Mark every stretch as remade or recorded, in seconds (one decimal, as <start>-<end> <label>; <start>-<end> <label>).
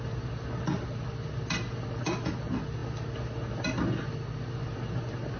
0.0-5.4 recorded